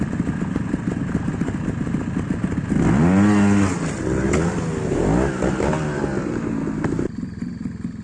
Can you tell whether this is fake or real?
real